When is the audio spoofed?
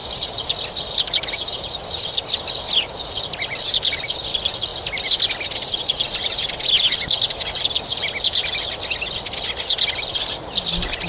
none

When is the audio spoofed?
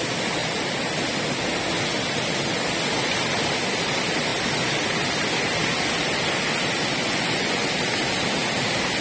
7.0-7.7 (vocoder, Vocos)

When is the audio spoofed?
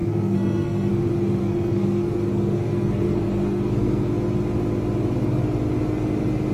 0.0-0.9 (codec, SNAC); 1.4-4.1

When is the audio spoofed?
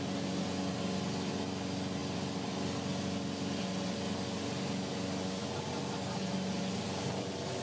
none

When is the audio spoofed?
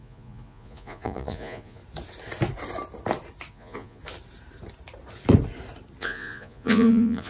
0.0-1.8 (vocoder, Vocos); 3.5-4.0; 6.0-7.3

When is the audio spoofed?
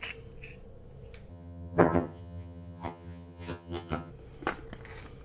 1.3-4.1 (vocoder, HiFi-GAN)